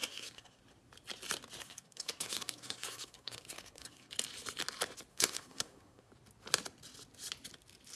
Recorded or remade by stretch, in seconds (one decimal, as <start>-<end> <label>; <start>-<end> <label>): 0.0-0.6 remade; 0.6-1.6 recorded; 1.6-4.1 remade; 4.1-5.1 recorded; 5.1-6.1 remade; 6.1-8.0 recorded